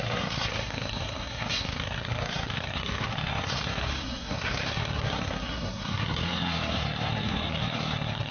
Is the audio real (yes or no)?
no